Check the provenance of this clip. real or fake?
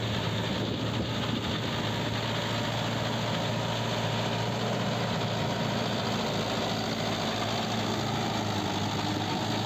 real